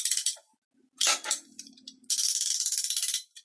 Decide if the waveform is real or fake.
real